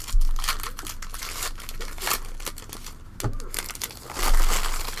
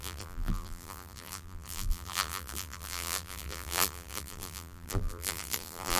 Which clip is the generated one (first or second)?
second